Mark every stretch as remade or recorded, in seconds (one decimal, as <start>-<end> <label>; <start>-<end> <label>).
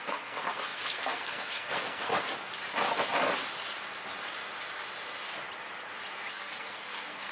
0.0-2.1 remade; 2.1-6.3 recorded; 6.3-7.3 remade